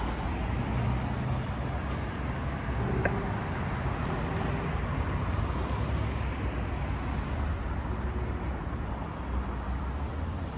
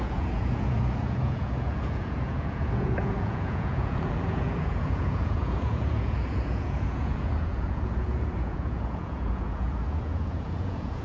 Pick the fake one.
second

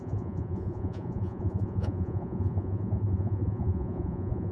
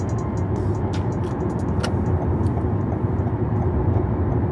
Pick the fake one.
first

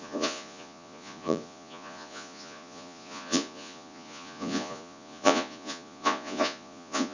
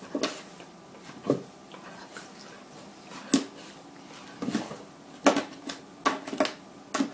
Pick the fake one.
first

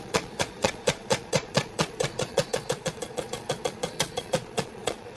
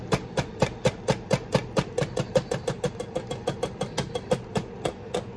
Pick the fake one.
first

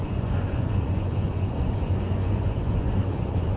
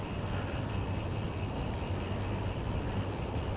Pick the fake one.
first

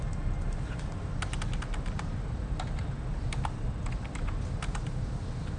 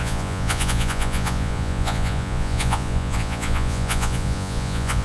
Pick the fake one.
second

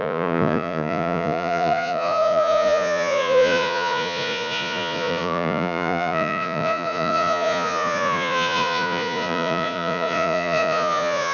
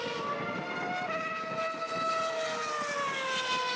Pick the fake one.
first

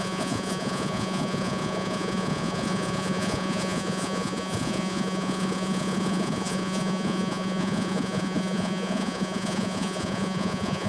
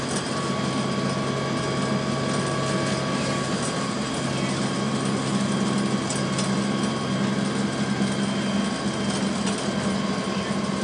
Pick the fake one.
first